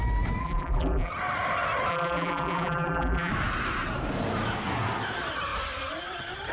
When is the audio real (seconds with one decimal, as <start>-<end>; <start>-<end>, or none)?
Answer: 0.0-0.4; 1.1-1.9; 3.3-6.5